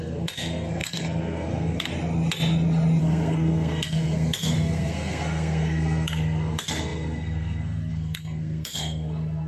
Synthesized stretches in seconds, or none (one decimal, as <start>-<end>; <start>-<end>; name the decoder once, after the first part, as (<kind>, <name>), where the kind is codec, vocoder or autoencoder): 0.0-1.9 (codec, SNAC); 3.0-9.5